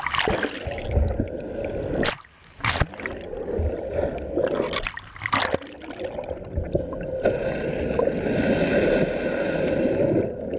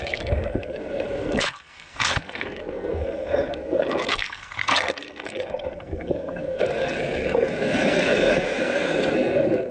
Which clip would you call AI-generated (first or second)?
second